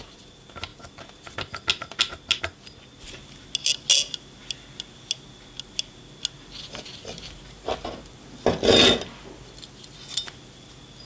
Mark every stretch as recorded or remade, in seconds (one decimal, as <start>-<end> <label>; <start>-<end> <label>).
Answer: 0.0-11.1 recorded